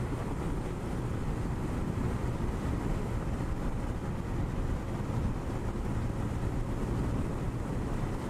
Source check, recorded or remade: recorded